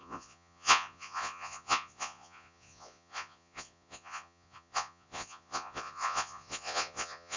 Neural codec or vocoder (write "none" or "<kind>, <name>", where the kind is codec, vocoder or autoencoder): vocoder, Vocos